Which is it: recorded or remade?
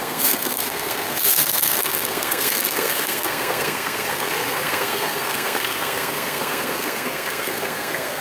remade